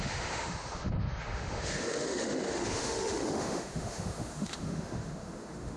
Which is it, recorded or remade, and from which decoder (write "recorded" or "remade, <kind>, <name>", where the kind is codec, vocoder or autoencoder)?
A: remade, autoencoder, DAC-VAE